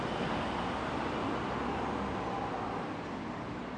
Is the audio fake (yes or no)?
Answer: no